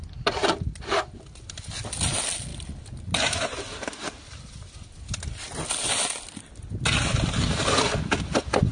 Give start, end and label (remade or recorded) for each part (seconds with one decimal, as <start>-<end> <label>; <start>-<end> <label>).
0.0-2.5 recorded; 2.5-3.9 remade; 3.9-8.7 recorded